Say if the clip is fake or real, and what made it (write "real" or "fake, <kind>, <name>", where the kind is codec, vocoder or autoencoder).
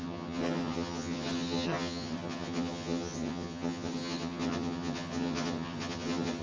fake, vocoder, HiFi-GAN